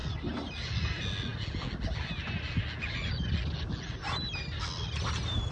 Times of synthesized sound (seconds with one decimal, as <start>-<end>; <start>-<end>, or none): none